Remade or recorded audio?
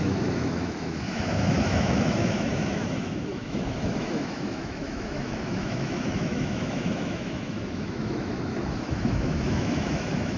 remade